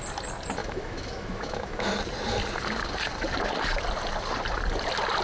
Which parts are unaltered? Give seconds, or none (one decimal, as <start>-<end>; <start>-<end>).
0.0-0.6; 1.9-5.2